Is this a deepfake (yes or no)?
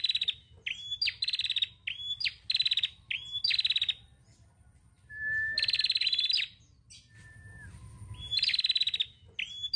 no